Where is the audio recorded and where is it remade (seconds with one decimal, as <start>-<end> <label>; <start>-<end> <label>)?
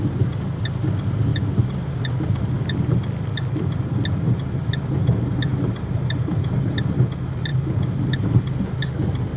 0.0-1.3 recorded; 1.3-2.2 remade; 2.2-5.5 recorded; 5.5-7.0 remade; 7.0-9.4 recorded